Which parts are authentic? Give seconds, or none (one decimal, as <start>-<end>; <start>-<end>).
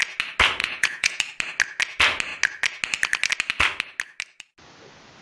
0.0-0.6; 1.2-5.2